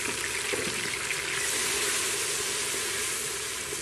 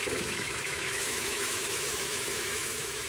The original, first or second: first